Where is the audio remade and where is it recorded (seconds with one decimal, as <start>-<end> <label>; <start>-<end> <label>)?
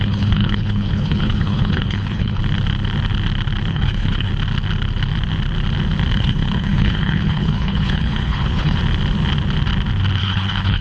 0.0-2.4 remade; 2.4-3.7 recorded; 3.7-4.3 remade; 4.3-6.1 recorded; 6.1-8.8 remade; 8.8-10.2 recorded; 10.2-10.8 remade